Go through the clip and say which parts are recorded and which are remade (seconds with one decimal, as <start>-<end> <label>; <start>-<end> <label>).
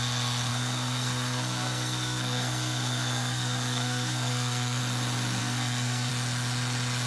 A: 0.0-0.5 recorded; 0.5-4.8 remade; 4.8-5.4 recorded; 5.4-6.1 remade; 6.1-7.1 recorded